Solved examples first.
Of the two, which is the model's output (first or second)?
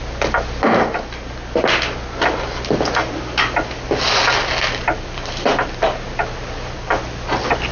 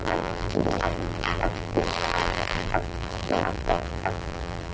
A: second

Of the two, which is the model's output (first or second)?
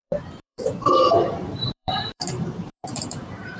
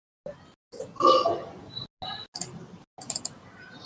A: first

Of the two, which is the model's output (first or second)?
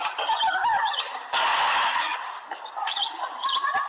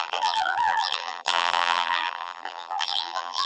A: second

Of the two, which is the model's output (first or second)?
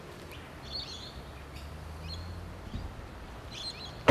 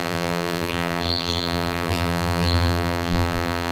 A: second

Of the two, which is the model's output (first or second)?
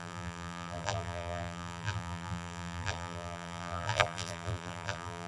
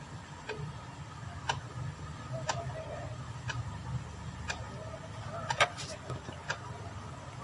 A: first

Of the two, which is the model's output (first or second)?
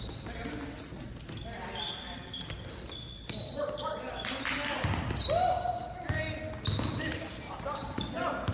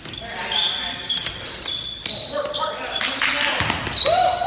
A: second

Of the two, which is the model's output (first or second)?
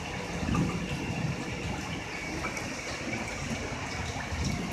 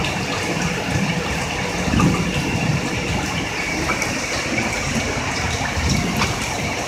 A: second